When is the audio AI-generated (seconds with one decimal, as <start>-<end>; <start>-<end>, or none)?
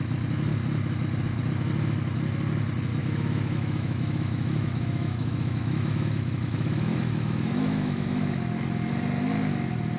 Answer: 3.0-8.2